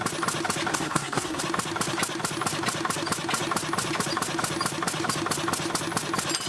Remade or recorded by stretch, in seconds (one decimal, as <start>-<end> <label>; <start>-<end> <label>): 0.0-0.7 recorded; 0.7-1.4 remade; 1.4-6.5 recorded